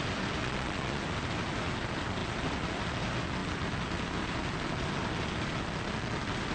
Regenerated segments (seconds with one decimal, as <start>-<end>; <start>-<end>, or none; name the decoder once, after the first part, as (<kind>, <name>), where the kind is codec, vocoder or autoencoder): 0.4-1.0 (vocoder, Vocos)